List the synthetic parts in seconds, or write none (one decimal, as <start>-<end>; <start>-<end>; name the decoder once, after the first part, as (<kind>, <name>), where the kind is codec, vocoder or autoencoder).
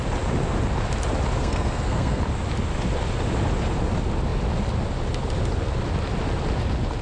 1.4-2.2 (codec, SNAC)